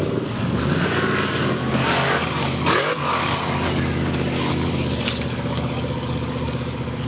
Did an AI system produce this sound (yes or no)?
yes